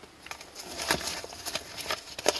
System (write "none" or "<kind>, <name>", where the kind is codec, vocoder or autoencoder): none